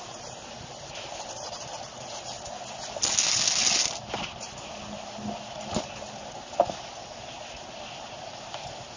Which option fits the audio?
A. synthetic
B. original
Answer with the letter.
B